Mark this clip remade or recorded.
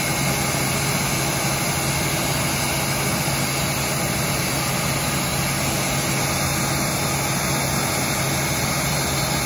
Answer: recorded